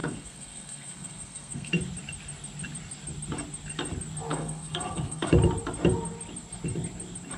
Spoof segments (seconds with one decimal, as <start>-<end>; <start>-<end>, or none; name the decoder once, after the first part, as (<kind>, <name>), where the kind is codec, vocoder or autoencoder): 0.0-1.7 (codec, SNAC); 4.3-5.3